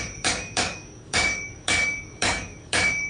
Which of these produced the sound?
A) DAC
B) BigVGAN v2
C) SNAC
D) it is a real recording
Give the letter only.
A